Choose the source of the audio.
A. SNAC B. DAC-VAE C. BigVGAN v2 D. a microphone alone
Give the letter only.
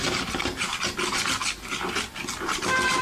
D